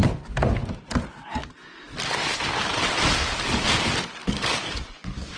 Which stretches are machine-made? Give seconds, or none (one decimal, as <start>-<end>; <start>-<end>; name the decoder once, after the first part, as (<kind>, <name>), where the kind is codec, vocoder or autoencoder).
4.2-5.4 (codec, DAC)